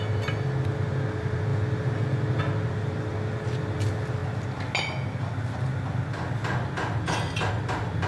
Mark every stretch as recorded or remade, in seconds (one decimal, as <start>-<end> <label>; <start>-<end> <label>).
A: 0.0-8.1 recorded